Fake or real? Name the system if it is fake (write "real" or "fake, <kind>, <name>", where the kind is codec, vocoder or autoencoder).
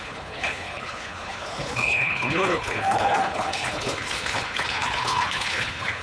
fake, codec, HILCodec